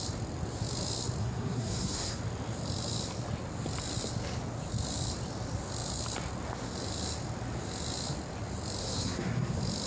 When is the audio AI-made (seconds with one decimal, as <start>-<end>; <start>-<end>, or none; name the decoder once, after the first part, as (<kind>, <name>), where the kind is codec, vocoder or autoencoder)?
1.2-2.2 (codec, SNAC); 8.8-9.5